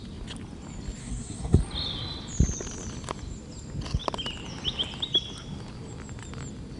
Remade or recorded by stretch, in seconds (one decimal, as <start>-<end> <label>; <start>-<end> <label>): 0.0-1.0 recorded; 1.0-1.6 remade; 1.6-6.8 recorded